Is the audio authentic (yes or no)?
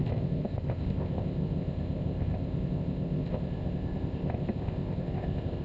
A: no